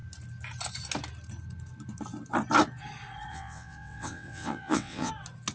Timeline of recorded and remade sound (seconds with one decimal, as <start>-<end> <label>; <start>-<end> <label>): 0.0-3.3 recorded; 3.3-5.1 remade; 5.1-5.5 recorded